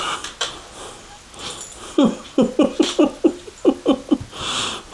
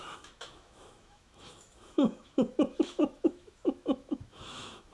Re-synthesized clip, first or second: second